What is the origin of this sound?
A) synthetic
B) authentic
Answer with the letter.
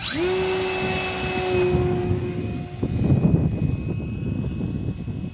B